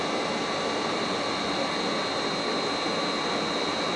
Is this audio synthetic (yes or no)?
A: no